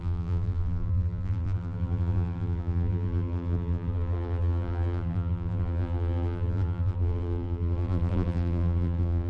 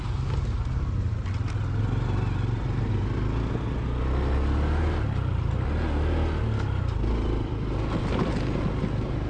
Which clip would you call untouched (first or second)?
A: second